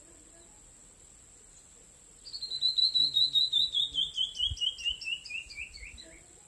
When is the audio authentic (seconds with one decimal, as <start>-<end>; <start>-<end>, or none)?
0.0-6.5